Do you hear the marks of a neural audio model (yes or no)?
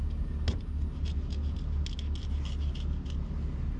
no